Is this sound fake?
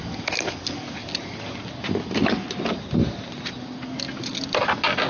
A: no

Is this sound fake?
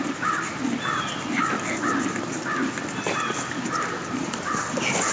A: no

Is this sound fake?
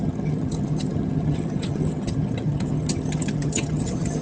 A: yes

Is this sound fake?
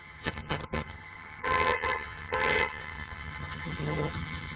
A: yes